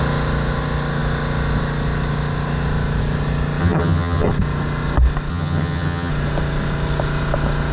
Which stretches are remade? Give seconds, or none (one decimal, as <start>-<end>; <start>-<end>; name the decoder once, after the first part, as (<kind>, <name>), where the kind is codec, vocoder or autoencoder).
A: 3.6-4.3 (vocoder, HiFi-GAN); 5.3-6.1